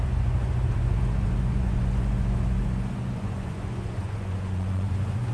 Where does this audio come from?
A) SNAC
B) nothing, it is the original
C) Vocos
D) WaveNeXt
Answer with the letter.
C